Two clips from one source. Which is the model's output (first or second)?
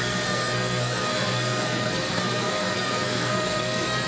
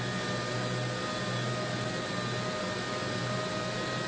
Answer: first